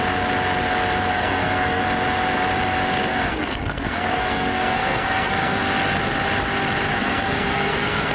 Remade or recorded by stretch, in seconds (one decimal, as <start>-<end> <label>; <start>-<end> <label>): 0.0-1.1 recorded; 1.1-1.8 remade; 1.8-3.0 recorded; 3.0-5.6 remade; 5.6-6.9 recorded; 6.9-8.1 remade